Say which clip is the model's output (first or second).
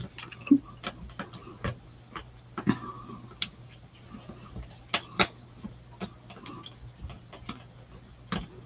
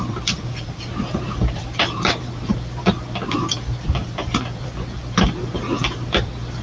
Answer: second